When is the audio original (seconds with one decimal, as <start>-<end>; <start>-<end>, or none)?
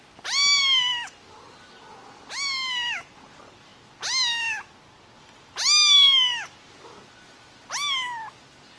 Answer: 0.0-8.8